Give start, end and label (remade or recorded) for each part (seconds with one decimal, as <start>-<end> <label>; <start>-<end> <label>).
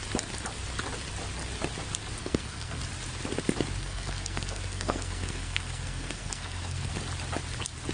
0.0-2.2 recorded; 2.2-2.8 remade; 2.8-3.8 recorded; 3.8-6.9 remade; 6.9-7.9 recorded